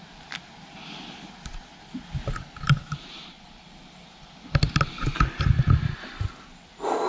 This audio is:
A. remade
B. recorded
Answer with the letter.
B